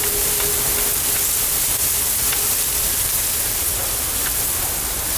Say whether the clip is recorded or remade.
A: recorded